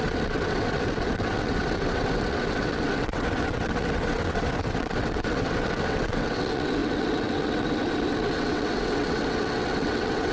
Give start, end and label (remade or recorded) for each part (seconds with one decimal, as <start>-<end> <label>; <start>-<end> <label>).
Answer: 0.0-10.3 remade